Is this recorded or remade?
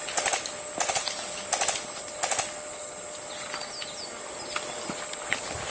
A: recorded